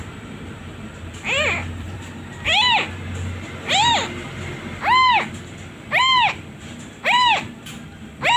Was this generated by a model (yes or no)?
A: yes